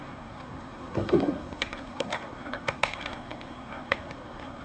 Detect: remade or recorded remade